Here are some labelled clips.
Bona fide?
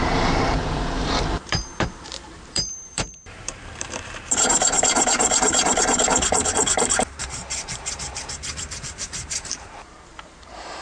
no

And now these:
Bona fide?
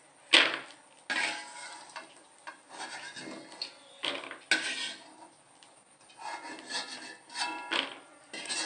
yes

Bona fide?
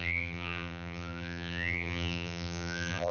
no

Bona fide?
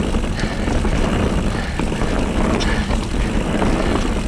yes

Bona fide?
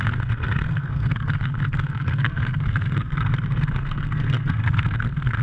no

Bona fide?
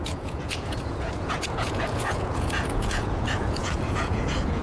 no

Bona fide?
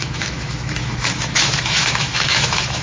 no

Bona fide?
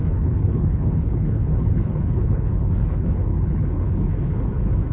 no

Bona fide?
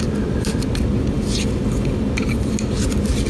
yes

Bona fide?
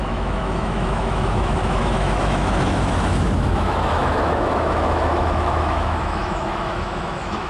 no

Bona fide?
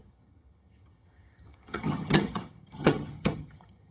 no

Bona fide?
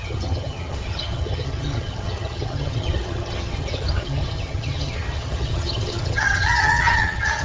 no